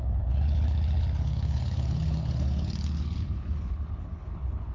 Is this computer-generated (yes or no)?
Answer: yes